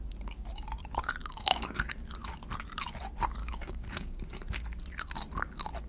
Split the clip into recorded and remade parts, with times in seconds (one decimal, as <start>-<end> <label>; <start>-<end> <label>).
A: 0.0-1.2 recorded; 1.2-1.9 remade; 1.9-3.4 recorded; 3.4-4.2 remade; 4.2-5.9 recorded